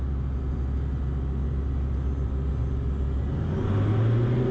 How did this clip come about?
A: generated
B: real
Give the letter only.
B